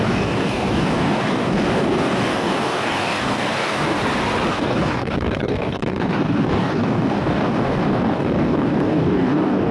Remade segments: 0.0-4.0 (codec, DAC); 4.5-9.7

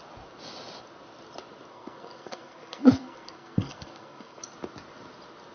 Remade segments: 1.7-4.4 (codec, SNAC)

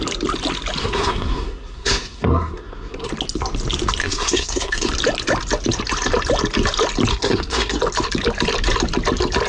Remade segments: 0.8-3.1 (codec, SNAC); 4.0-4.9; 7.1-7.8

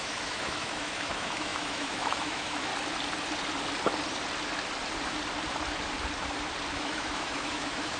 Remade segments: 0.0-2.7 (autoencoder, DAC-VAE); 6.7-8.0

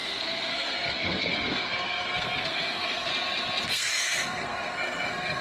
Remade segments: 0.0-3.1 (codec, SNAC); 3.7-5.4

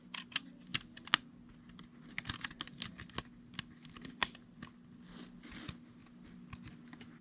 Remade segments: none

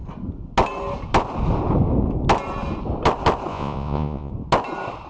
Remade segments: 3.5-4.3 (vocoder, Vocos)

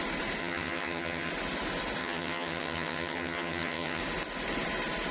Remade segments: 0.4-1.3 (vocoder, HiFi-GAN); 2.0-4.0